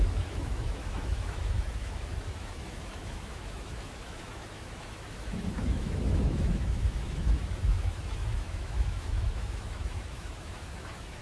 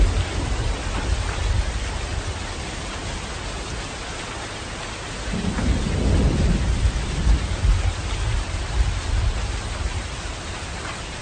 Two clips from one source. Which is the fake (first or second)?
first